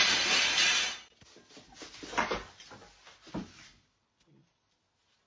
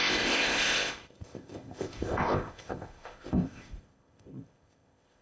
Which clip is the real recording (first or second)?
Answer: first